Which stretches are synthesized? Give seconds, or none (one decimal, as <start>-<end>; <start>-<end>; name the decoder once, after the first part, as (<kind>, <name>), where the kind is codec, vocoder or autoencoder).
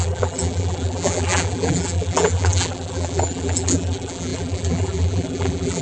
0.0-5.8 (vocoder, BigVGAN v2)